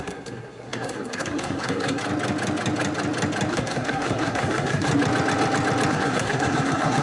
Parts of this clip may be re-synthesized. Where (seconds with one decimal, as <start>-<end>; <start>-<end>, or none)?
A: 0.0-2.0; 3.5-4.9; 5.9-7.0

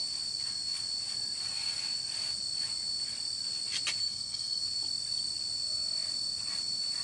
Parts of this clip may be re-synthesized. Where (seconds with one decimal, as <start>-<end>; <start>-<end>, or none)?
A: 4.0-4.6

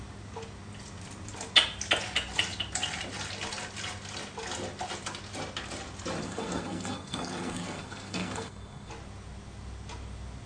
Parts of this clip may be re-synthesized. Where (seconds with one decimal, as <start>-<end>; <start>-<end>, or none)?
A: 6.2-8.9

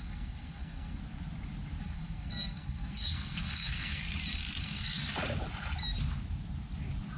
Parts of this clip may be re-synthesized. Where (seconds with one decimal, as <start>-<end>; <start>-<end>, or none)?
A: 0.0-1.0; 1.8-4.0; 4.6-5.0

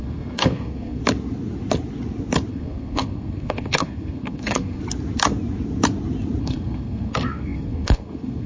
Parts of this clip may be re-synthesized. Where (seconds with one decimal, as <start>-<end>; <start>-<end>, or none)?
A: 0.0-1.0; 2.5-4.8; 6.4-8.5